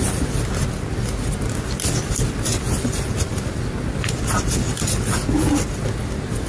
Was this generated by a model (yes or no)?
no